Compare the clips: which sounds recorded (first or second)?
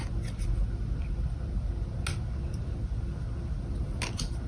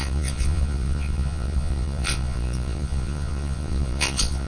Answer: first